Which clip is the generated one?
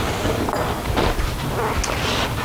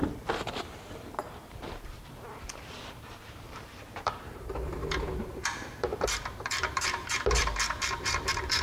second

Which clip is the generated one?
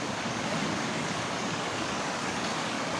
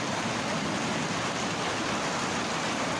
first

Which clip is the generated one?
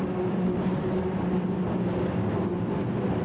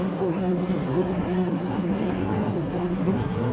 second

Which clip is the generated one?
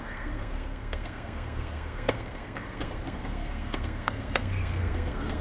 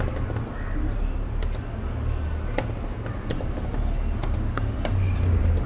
first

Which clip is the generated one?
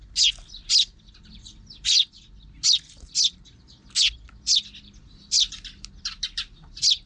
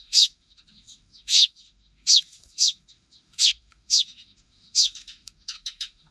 second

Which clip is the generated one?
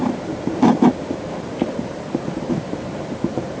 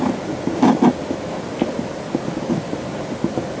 first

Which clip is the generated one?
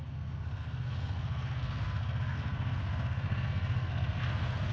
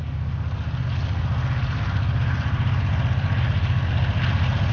first